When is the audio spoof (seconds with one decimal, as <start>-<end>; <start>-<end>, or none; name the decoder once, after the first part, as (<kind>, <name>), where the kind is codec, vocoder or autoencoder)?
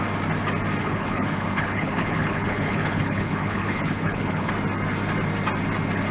0.8-4.5 (codec, HILCodec)